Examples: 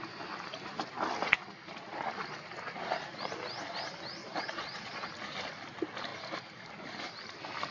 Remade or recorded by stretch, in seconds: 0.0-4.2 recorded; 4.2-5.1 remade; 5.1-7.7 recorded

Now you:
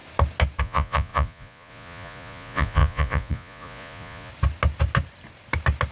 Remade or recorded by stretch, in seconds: 0.0-0.6 recorded; 0.6-4.3 remade; 4.3-5.9 recorded

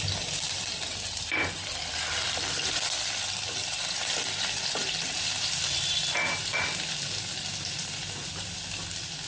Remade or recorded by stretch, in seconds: 0.0-9.3 recorded

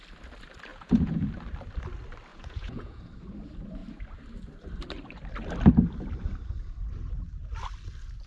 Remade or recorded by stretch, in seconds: 0.0-0.7 recorded; 0.7-1.3 remade; 1.3-2.3 recorded; 2.3-3.0 remade; 3.0-8.3 recorded

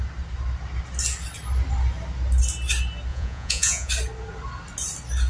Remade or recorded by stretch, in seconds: 0.0-3.1 recorded; 3.1-3.9 remade; 3.9-5.3 recorded